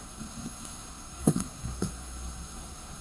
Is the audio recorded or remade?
remade